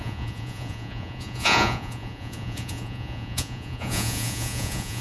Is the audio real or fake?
fake